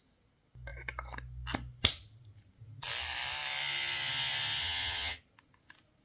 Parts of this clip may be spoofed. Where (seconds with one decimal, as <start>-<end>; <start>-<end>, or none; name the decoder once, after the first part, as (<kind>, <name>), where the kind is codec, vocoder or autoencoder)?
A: 4.6-5.2 (vocoder, HiFi-GAN)